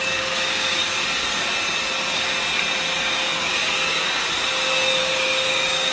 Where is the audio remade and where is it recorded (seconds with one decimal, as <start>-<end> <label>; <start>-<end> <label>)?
0.0-0.8 remade; 0.8-3.0 recorded; 3.0-4.2 remade; 4.2-5.0 recorded; 5.0-5.9 remade